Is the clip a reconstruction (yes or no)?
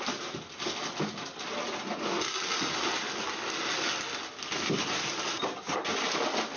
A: no